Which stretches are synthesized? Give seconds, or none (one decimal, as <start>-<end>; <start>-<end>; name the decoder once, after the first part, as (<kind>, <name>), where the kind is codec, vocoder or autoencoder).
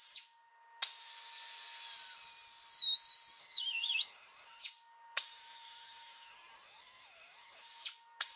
0.0-0.5 (codec, DAC); 3.4-8.4